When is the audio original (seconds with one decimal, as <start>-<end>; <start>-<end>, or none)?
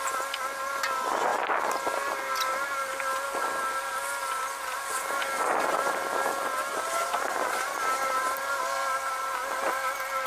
0.0-1.3; 3.0-7.0; 9.4-10.3